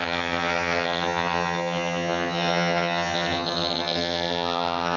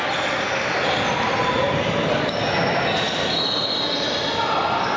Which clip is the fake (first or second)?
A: first